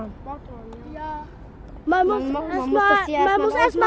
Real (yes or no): yes